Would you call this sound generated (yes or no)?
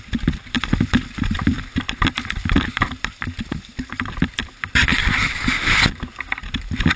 yes